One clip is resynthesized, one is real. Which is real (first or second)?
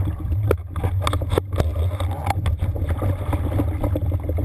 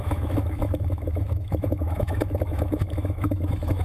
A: first